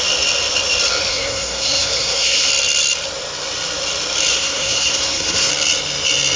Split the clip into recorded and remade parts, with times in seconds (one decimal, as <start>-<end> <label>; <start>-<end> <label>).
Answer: 0.0-1.1 recorded; 1.1-2.5 remade; 2.5-4.3 recorded; 4.3-5.5 remade; 5.5-6.4 recorded